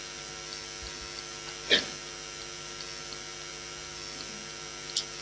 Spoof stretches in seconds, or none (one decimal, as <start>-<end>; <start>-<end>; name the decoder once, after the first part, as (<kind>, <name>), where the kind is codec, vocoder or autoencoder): none